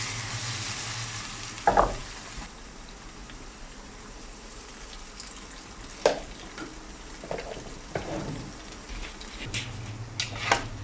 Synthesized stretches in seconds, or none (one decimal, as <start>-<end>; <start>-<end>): none